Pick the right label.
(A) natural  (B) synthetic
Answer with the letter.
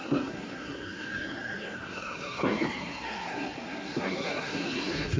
B